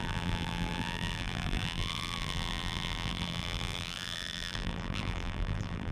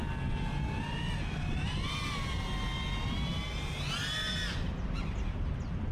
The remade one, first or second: first